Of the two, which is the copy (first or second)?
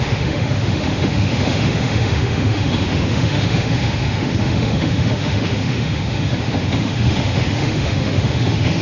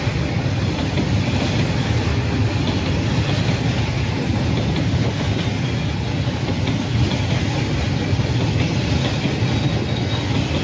first